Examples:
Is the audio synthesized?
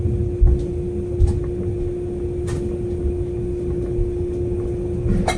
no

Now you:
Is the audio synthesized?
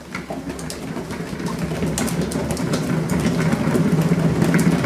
no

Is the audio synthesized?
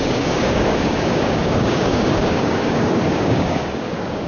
yes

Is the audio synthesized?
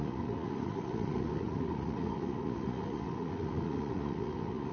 yes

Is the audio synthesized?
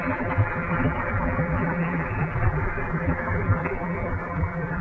yes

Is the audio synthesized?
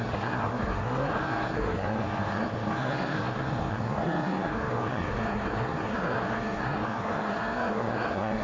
yes